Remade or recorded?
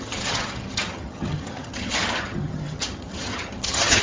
remade